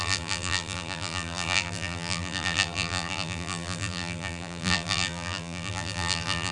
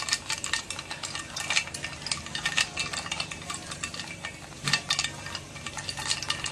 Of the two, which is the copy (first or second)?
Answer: first